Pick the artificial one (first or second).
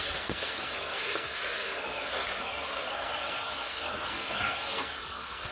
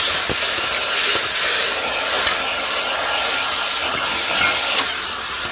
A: first